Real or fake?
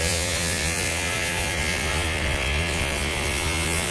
fake